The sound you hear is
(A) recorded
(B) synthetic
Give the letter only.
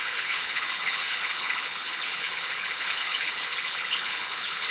B